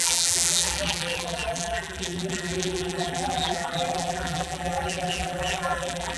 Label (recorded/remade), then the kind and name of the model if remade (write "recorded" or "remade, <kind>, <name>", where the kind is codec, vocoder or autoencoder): remade, vocoder, BigVGAN v2